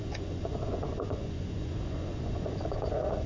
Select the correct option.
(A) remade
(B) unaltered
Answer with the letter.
A